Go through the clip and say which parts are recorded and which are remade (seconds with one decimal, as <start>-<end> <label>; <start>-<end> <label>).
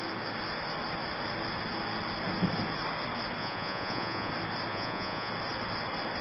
0.0-3.4 recorded; 3.4-4.3 remade; 4.3-4.7 recorded; 4.7-5.3 remade; 5.3-6.2 recorded